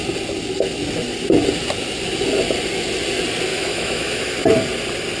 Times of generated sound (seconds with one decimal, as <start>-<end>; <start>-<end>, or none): 3.5-4.3